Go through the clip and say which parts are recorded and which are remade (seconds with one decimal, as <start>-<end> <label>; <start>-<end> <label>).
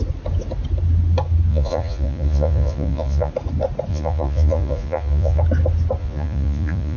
0.0-1.5 recorded; 1.5-3.3 remade; 3.3-3.9 recorded; 3.9-5.4 remade; 5.4-6.0 recorded; 6.0-7.0 remade